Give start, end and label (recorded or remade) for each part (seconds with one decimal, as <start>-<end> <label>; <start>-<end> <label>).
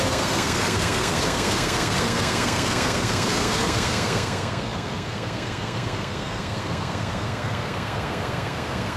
0.0-9.0 remade